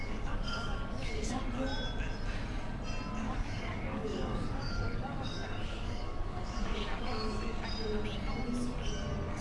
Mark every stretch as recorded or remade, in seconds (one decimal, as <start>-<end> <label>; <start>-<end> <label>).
0.0-1.4 remade; 1.4-3.2 recorded; 3.2-7.4 remade; 7.4-9.4 recorded